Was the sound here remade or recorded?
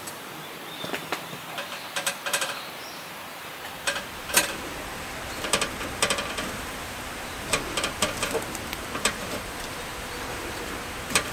remade